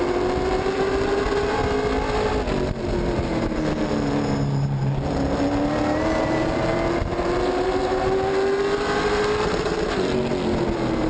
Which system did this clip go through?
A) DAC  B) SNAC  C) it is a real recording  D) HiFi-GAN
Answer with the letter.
C